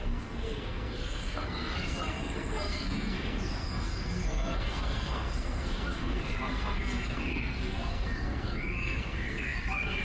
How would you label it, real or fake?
fake